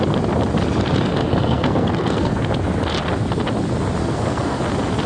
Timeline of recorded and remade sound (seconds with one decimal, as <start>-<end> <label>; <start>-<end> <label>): 0.0-1.3 recorded; 1.3-2.5 remade; 2.5-4.0 recorded; 4.0-4.6 remade; 4.6-5.1 recorded